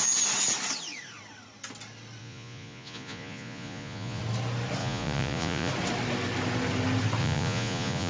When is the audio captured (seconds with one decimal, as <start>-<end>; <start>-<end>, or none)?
0.0-2.2; 4.2-4.8; 5.7-7.2